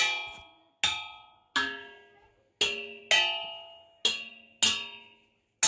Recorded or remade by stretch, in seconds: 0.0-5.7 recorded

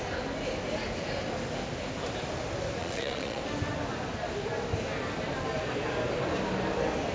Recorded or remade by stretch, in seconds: 0.0-2.8 recorded; 2.8-3.4 remade; 3.4-7.1 recorded

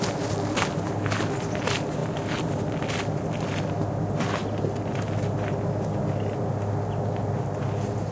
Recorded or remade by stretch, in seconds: 0.0-8.1 recorded